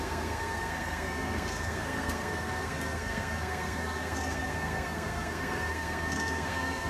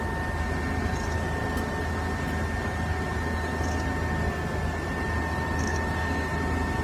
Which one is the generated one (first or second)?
first